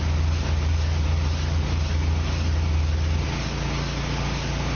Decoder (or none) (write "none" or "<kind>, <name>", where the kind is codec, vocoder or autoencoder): none